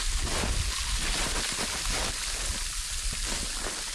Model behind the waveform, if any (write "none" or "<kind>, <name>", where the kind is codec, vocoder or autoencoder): none